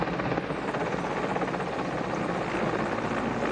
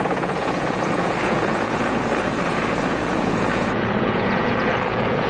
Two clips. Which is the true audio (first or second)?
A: first